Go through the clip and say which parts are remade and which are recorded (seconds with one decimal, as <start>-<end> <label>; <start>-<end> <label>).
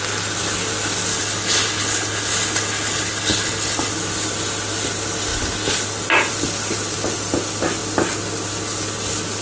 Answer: 0.0-1.1 recorded; 1.1-3.9 remade; 3.9-9.4 recorded